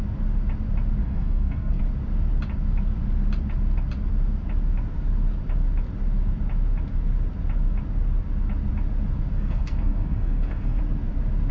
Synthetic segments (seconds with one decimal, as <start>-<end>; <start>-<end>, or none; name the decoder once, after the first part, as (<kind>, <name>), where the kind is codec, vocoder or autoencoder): 1.0-1.8 (codec, SNAC); 9.3-10.8